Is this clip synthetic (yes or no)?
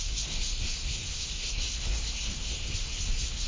yes